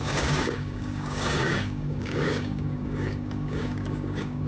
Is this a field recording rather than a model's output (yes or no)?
no